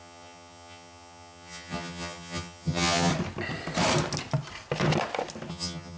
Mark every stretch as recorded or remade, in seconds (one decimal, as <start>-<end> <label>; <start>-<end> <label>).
0.0-3.1 remade; 3.1-5.5 recorded; 5.5-6.0 remade